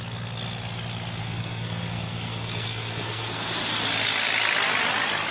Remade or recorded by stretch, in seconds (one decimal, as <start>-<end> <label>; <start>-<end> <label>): 0.0-1.2 recorded; 1.2-3.5 remade; 3.5-5.3 recorded